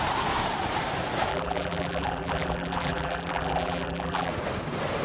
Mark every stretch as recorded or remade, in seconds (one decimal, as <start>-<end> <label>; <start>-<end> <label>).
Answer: 0.0-1.3 recorded; 1.3-4.3 remade; 4.3-5.0 recorded